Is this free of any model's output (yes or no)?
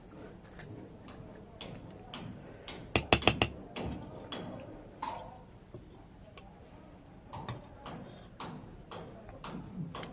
yes